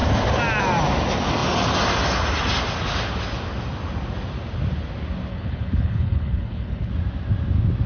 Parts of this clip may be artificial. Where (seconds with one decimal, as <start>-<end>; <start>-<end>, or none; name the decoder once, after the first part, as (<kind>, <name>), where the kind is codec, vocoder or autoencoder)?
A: 5.3-6.9 (codec, HILCodec)